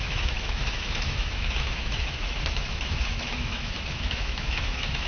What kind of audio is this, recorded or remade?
remade